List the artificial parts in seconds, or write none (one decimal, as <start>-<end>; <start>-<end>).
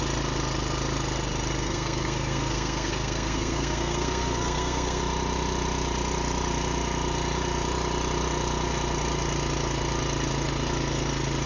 1.6-5.0